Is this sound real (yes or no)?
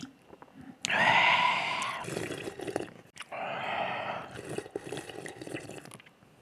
yes